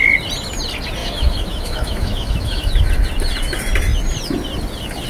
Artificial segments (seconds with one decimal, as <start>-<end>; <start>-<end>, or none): 1.0-2.7